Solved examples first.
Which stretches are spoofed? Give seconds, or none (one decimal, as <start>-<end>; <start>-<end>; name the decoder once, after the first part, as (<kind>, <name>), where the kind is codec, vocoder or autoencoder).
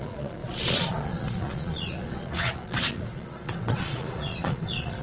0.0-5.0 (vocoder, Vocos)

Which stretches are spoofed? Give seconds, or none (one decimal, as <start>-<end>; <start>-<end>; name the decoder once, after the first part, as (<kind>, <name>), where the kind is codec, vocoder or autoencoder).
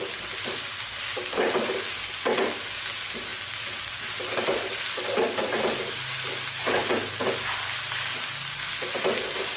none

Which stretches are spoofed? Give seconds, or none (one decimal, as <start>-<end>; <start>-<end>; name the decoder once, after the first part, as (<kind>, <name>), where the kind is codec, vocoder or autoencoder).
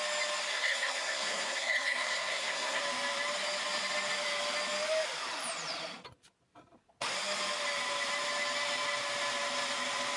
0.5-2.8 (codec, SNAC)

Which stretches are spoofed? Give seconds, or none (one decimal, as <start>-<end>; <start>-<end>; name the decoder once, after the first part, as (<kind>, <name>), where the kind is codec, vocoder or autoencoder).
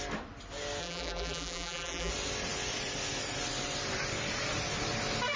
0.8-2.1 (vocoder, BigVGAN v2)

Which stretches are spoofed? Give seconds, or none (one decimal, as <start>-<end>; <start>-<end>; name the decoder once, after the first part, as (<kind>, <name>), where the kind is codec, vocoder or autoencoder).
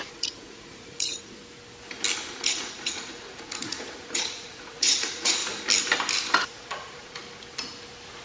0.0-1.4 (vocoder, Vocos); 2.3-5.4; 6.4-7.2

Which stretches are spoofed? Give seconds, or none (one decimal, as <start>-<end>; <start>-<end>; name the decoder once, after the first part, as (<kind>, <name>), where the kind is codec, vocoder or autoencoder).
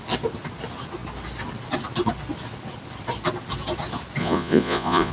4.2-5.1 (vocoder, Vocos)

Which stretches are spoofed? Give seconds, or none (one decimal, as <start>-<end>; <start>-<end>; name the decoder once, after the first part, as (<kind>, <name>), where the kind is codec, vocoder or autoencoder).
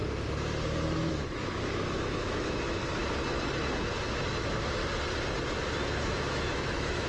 1.1-2.8 (autoencoder, DAC-VAE); 4.1-4.8; 6.0-7.1